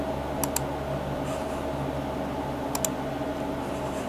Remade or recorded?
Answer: recorded